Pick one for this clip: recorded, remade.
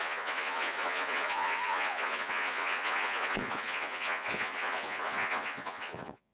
remade